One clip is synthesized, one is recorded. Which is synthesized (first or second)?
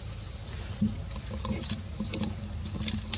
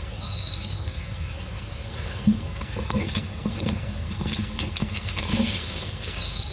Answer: second